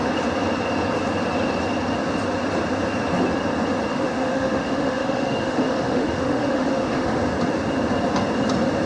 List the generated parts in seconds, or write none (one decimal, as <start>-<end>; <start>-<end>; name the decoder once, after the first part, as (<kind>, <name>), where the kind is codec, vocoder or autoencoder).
3.9-7.2 (autoencoder, DAC-VAE)

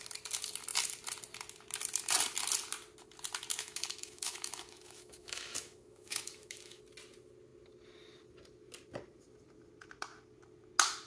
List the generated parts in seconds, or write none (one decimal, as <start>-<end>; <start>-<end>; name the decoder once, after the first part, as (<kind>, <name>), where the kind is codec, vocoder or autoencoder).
3.5-6.8 (autoencoder, DAC-VAE)

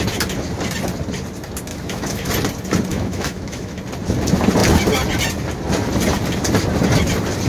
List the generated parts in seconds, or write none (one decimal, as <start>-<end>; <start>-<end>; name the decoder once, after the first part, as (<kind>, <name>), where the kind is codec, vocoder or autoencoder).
1.7-2.3 (autoencoder, DAC-VAE); 2.9-3.8

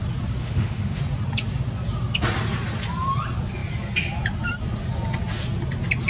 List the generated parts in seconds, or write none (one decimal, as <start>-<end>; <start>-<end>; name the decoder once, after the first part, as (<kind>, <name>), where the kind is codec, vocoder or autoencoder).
0.4-1.0 (autoencoder, DAC-VAE)

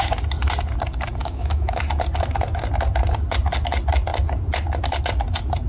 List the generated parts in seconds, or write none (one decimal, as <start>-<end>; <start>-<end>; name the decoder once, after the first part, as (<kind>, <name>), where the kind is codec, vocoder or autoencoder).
1.2-1.8 (autoencoder, DAC-VAE)